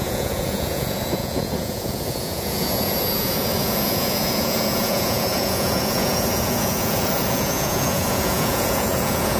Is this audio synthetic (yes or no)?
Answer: yes